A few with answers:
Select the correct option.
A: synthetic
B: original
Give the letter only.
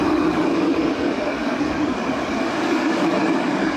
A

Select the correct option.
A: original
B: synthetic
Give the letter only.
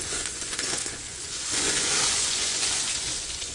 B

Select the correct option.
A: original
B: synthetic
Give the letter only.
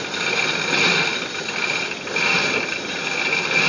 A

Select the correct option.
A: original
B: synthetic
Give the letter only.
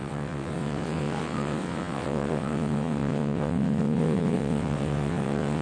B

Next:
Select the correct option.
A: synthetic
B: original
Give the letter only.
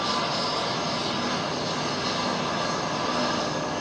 B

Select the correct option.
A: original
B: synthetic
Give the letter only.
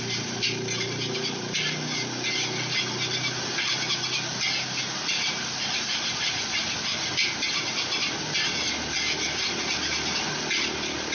A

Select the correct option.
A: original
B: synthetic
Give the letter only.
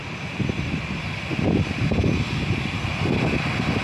A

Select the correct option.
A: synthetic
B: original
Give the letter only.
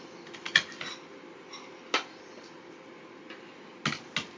B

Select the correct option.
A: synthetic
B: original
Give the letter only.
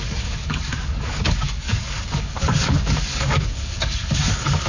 A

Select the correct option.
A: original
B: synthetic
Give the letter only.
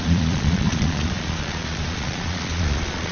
B